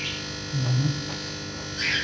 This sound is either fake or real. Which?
real